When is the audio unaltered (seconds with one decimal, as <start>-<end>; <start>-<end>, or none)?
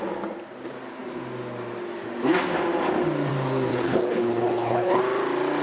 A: 0.0-3.7; 5.0-5.6